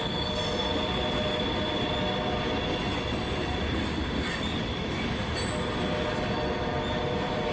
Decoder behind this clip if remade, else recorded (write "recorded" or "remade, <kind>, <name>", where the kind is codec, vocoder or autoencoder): recorded